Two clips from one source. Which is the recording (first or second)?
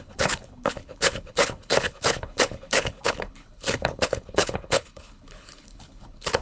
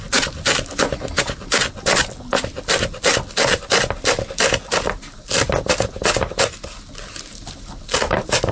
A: second